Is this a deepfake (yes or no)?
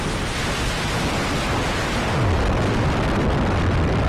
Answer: no